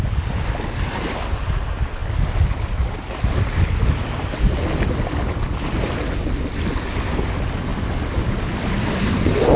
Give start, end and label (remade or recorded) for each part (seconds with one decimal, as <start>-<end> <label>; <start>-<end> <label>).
0.0-9.6 recorded